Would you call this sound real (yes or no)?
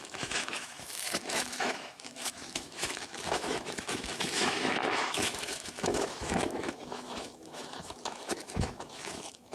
no